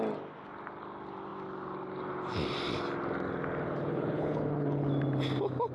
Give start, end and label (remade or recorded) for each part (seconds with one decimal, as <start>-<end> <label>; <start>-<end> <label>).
0.0-3.9 recorded; 3.9-4.9 remade; 4.9-5.7 recorded